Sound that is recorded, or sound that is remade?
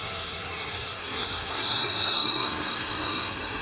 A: remade